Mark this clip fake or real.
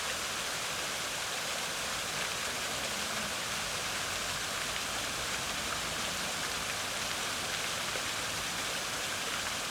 real